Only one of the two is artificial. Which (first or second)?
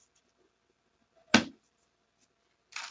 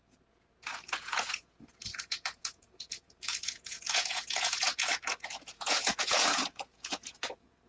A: second